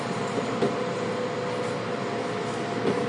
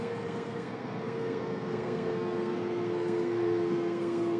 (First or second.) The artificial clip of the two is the second